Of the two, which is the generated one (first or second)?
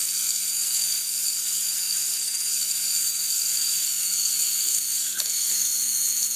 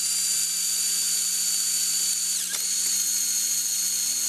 first